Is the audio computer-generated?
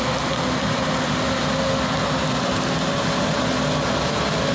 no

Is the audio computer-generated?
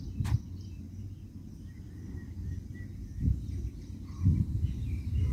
no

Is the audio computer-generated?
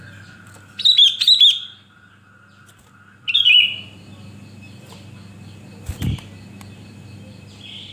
no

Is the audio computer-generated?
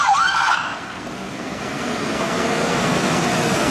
yes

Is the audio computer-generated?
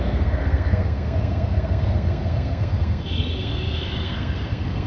yes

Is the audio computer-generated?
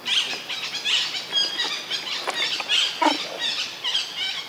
no